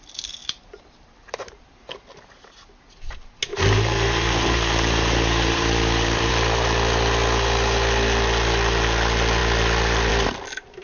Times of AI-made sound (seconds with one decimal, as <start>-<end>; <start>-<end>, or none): 0.4-1.9; 3.5-6.3